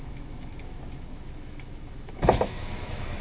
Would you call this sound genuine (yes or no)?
no